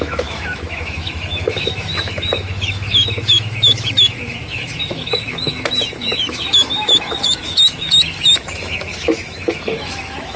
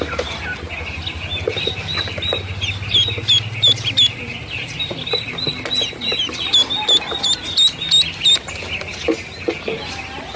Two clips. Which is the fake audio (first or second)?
first